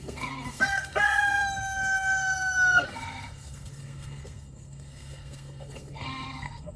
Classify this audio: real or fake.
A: fake